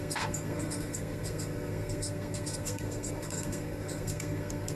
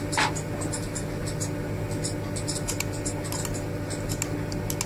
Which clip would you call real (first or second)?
second